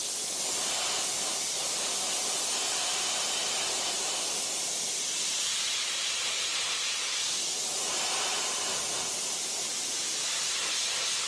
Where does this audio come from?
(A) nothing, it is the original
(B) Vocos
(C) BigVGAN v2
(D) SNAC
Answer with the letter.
C